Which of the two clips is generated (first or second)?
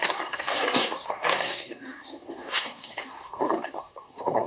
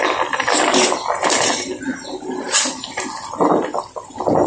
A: first